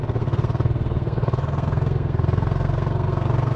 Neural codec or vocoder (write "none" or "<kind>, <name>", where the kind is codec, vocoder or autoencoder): codec, SNAC